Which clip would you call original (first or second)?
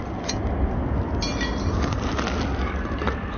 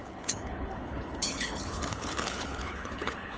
first